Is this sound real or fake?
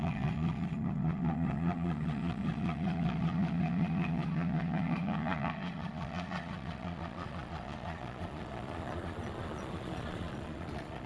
fake